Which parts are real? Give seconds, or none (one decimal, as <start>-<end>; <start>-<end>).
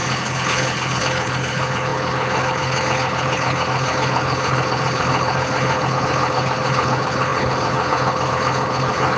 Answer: none